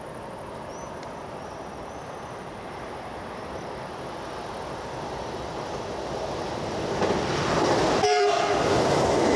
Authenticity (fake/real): real